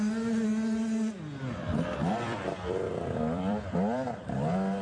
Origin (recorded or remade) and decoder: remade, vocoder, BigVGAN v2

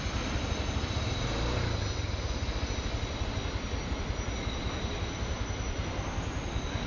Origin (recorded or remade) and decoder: recorded